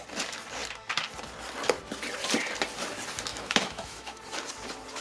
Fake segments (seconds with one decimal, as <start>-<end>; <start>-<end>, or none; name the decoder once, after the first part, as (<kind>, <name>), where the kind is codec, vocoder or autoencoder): 3.3-4.2 (autoencoder, DAC-VAE)